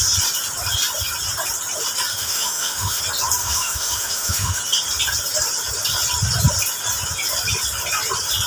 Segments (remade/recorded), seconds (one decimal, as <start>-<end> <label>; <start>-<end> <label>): 0.0-2.1 recorded; 2.1-3.0 remade; 3.0-3.4 recorded; 3.4-4.6 remade; 4.6-8.5 recorded